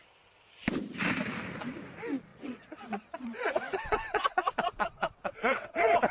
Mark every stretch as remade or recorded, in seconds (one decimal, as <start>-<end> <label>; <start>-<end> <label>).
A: 0.0-2.3 recorded; 2.3-6.1 remade